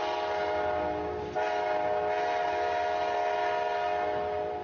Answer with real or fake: real